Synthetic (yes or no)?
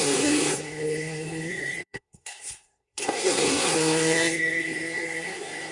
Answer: yes